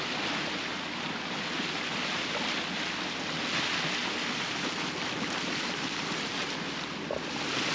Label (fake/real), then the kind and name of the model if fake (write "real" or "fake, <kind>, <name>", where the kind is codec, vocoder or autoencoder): real